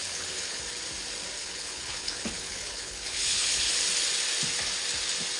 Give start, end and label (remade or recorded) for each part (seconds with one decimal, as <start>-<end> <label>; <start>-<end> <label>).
0.0-0.6 remade; 0.6-1.4 recorded; 1.4-3.7 remade; 3.7-5.4 recorded